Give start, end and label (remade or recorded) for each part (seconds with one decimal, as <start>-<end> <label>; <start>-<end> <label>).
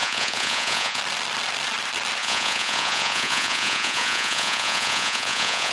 0.0-1.0 remade; 1.0-2.2 recorded; 2.2-5.7 remade